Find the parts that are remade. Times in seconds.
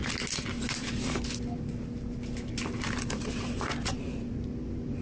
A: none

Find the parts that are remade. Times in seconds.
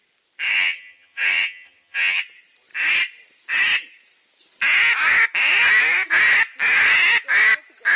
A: 0.5-2.2 (vocoder, HiFi-GAN)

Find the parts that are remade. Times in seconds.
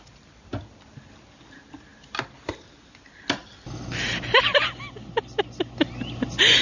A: none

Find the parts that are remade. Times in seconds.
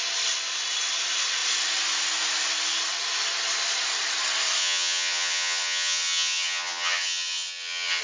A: 4.6-8.0 (vocoder, HiFi-GAN)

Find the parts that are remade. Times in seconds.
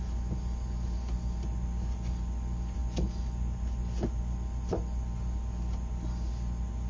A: none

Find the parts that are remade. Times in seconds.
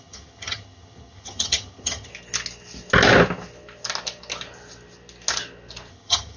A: 0.0-2.1 (vocoder, HiFi-GAN); 5.9-6.4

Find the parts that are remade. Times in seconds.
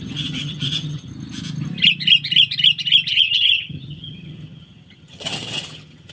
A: 0.0-1.1 (vocoder, HiFi-GAN); 3.1-6.1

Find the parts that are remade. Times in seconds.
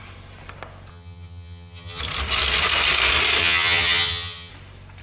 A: 0.9-2.0 (vocoder, HiFi-GAN); 3.4-4.5